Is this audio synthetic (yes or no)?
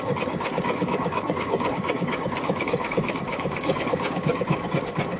yes